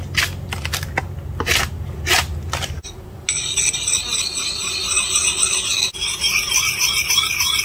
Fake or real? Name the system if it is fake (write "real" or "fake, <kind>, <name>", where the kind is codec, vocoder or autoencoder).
real